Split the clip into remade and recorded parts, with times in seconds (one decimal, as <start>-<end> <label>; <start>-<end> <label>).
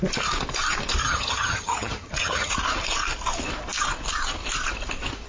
0.0-1.0 recorded; 1.0-2.5 remade; 2.5-5.3 recorded